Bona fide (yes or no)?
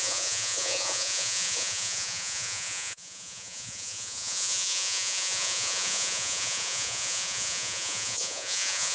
no